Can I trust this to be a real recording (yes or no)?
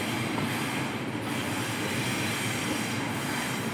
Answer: yes